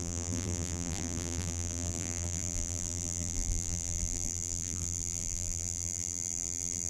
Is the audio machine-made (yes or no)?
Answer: yes